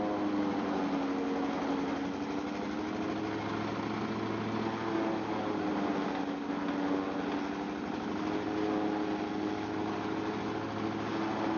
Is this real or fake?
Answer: real